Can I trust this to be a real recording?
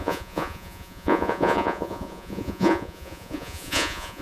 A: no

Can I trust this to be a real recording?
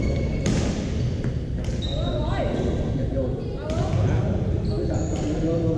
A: yes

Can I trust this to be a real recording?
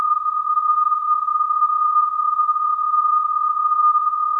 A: no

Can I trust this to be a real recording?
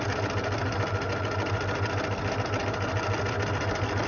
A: yes